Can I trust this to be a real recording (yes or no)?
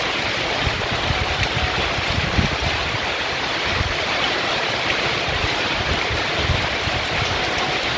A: yes